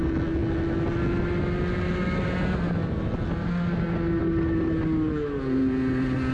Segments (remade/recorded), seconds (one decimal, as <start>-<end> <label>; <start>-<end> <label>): 0.0-6.3 recorded